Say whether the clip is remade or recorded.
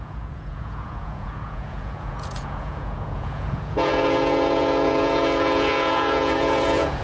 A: remade